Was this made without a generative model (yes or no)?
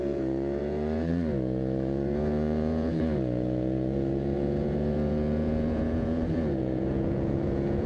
no